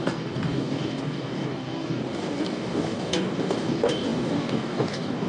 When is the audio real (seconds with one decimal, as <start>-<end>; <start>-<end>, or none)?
none